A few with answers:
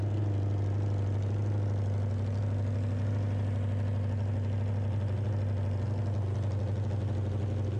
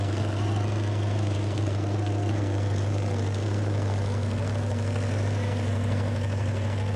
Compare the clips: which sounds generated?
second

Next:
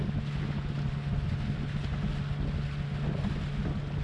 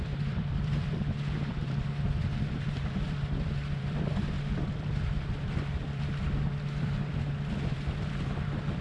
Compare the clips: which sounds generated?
second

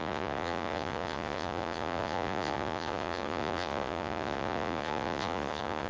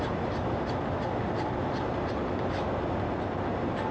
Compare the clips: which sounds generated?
first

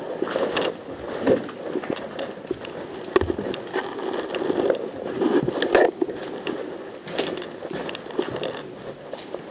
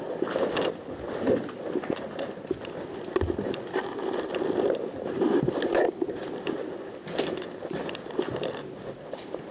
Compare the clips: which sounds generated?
second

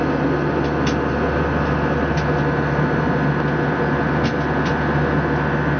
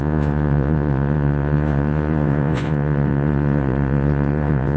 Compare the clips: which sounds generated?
second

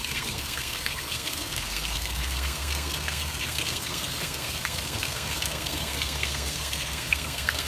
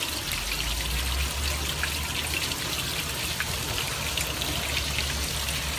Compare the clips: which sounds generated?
first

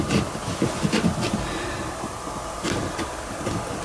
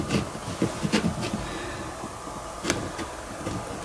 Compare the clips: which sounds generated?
first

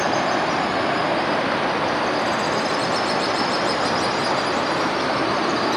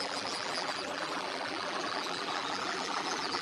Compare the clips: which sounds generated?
second